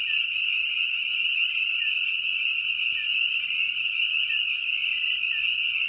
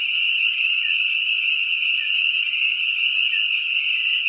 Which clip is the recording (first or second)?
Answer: first